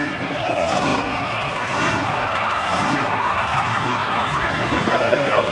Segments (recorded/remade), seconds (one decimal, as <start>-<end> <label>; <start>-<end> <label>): 0.0-5.5 remade